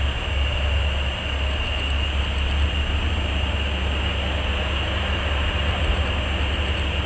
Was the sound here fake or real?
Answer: real